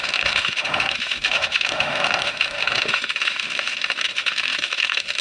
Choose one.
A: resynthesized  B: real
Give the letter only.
A